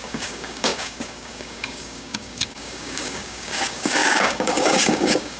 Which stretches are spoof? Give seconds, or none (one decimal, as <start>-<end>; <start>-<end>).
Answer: 0.0-5.4